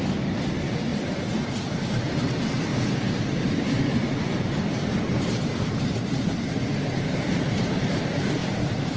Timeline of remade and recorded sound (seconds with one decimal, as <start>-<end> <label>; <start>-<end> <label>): 0.0-0.9 recorded; 0.9-1.9 remade; 1.9-2.7 recorded; 2.7-7.8 remade; 7.8-8.4 recorded; 8.4-9.0 remade

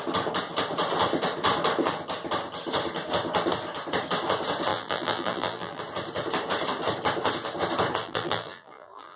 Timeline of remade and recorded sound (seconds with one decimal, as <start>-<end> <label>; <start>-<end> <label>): 0.0-4.7 recorded; 4.7-5.8 remade; 5.8-8.0 recorded; 8.0-9.2 remade

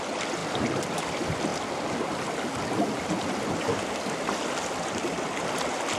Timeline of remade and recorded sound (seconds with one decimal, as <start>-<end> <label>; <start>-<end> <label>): 0.0-0.4 recorded; 0.4-1.0 remade; 1.0-6.0 recorded

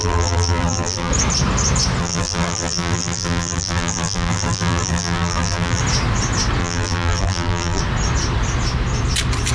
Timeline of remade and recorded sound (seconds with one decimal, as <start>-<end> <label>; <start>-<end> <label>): 0.0-1.1 remade; 1.1-2.0 recorded; 2.0-5.8 remade; 5.8-6.6 recorded; 6.6-7.8 remade; 7.8-9.5 recorded

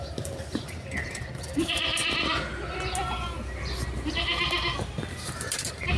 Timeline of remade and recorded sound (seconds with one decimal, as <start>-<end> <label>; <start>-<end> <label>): 0.0-2.0 remade; 2.0-5.1 recorded; 5.1-6.0 remade

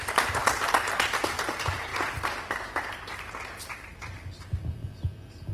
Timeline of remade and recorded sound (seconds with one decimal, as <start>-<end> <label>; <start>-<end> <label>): 0.0-0.4 remade; 0.4-1.2 recorded; 1.2-1.9 remade; 1.9-5.5 recorded